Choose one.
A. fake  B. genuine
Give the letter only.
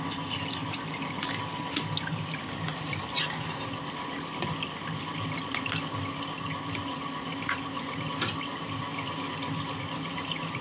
B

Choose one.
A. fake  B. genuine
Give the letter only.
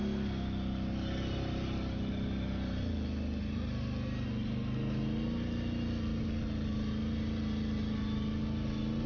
B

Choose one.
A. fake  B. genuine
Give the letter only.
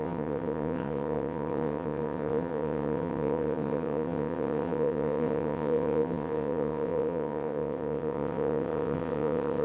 A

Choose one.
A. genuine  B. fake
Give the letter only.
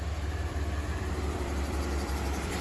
B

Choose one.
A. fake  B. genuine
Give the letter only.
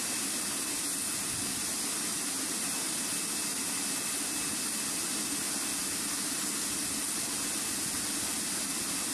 B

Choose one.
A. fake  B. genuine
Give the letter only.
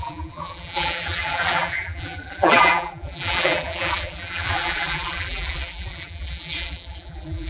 A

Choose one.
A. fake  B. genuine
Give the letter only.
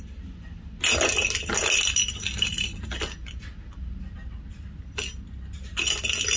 B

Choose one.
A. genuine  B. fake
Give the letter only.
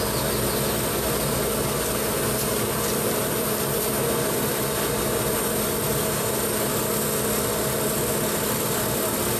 A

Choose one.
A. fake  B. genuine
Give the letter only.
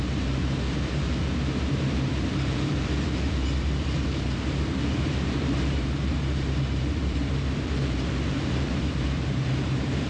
A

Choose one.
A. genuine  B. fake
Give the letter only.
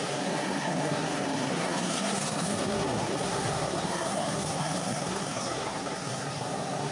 B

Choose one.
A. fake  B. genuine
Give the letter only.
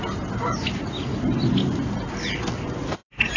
B